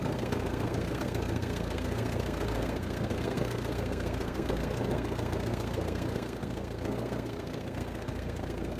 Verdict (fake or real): fake